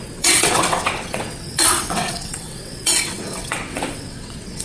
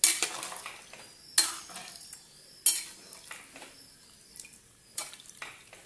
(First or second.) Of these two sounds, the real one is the second